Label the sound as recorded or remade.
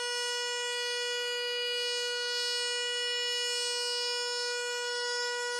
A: remade